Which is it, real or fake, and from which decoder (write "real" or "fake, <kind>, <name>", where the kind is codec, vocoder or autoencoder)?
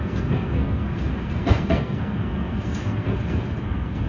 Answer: fake, codec, SNAC